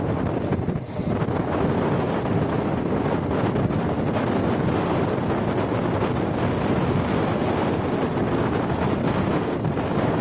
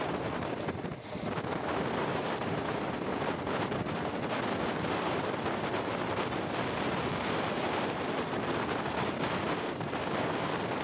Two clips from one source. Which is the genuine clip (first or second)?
first